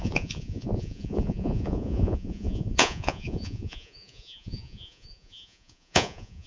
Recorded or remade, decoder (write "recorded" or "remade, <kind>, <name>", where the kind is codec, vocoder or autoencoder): remade, vocoder, Vocos